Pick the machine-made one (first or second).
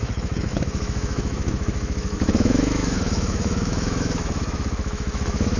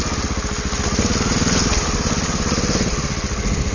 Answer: first